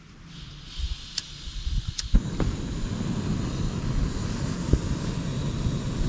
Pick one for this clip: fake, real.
real